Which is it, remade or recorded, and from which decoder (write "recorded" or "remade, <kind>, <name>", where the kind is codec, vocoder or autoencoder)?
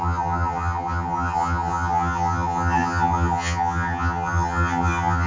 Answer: remade, vocoder, HiFi-GAN